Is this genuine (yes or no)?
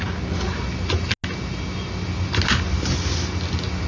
yes